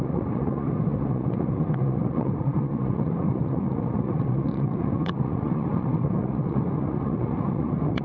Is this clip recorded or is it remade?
remade